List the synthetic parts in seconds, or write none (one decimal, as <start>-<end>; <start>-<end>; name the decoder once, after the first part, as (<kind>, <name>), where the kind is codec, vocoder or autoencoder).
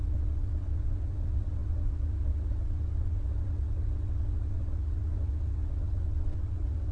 0.0-6.9 (vocoder, WaveNeXt)